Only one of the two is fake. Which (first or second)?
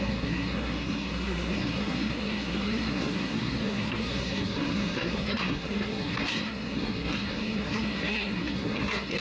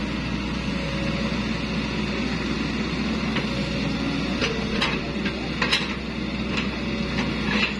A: first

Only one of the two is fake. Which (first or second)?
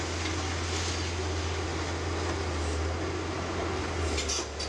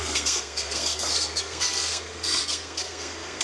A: second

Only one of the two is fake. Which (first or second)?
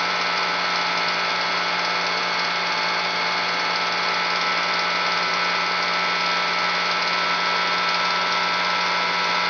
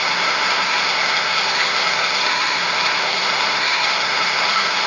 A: second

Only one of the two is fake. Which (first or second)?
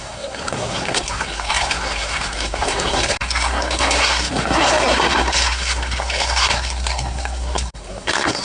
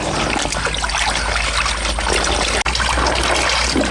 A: first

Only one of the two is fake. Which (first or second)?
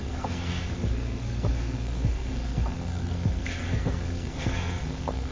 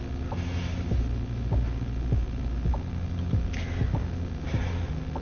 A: first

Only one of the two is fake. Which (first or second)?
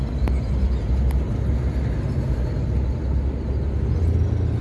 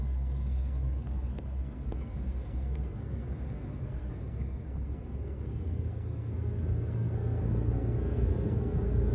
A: second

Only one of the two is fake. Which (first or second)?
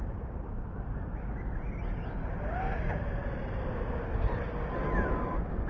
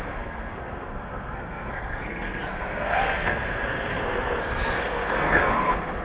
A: second